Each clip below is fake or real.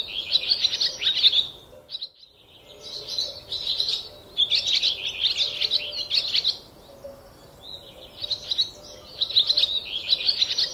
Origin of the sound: real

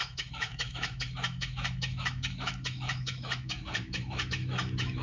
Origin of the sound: fake